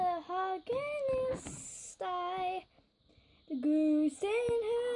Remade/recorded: recorded